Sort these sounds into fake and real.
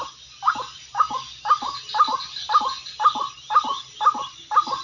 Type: real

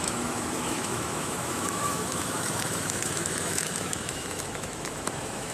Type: fake